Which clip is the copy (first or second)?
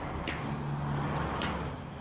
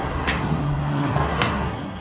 second